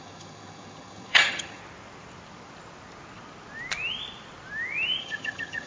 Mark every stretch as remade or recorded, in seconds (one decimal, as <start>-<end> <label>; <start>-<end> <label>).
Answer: 0.0-1.6 remade; 1.6-5.0 recorded; 5.0-5.7 remade